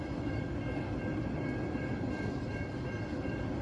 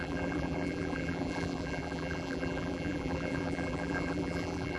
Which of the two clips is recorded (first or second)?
first